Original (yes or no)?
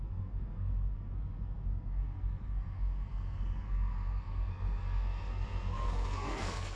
no